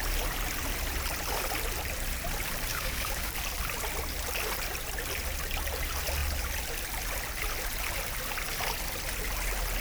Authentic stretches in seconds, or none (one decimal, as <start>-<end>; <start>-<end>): 0.0-2.7; 3.3-9.8